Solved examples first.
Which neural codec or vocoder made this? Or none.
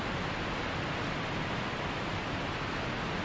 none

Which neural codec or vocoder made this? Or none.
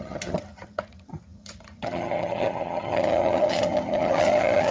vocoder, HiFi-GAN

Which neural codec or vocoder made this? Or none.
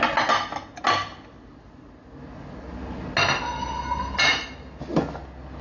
none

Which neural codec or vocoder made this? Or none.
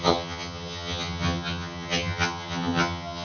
vocoder, HiFi-GAN